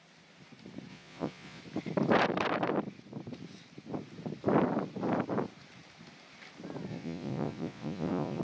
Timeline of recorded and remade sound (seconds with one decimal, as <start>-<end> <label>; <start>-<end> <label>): 0.0-0.9 recorded; 0.9-1.6 remade; 1.6-6.9 recorded; 6.9-8.4 remade